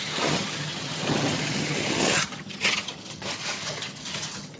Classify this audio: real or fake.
fake